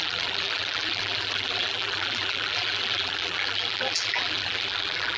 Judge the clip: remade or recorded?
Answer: remade